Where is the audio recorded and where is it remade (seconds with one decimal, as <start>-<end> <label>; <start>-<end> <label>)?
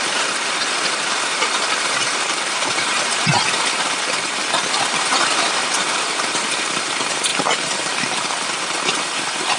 0.0-9.6 remade